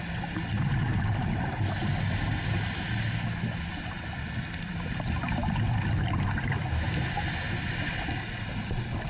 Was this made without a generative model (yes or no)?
yes